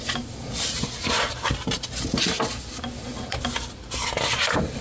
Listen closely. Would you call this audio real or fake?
real